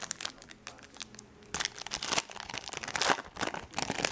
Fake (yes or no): no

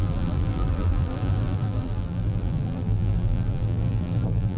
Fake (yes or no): yes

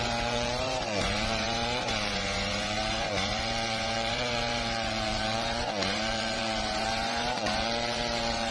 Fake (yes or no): yes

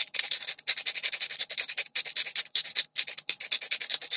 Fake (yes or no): yes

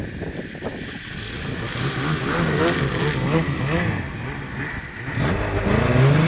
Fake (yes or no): no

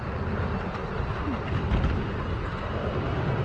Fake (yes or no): no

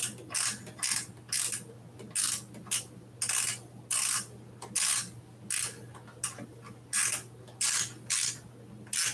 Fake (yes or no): no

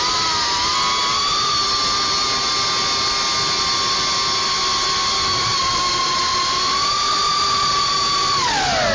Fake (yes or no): no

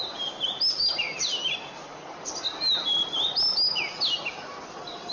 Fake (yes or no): no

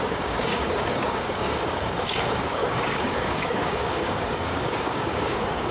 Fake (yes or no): yes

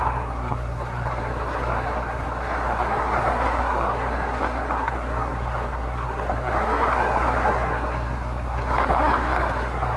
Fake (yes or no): yes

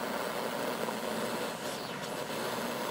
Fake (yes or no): no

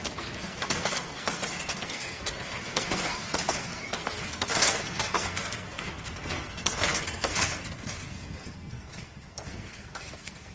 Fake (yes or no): yes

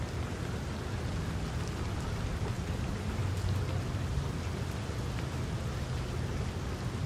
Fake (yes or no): no